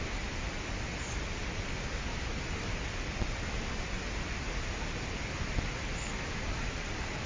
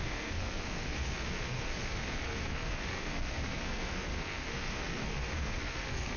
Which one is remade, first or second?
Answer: second